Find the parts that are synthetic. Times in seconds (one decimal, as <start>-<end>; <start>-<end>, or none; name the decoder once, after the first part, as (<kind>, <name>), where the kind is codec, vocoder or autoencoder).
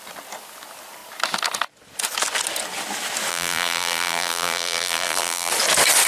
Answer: 3.3-5.5 (vocoder, BigVGAN v2)